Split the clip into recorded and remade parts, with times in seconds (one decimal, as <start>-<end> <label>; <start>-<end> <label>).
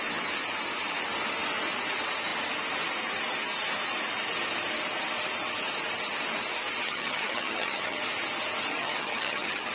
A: 0.0-6.8 recorded; 6.8-8.0 remade; 8.0-8.7 recorded; 8.7-9.7 remade